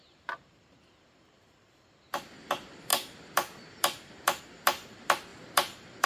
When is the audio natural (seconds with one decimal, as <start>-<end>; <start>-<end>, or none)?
2.2-2.9; 4.4-5.3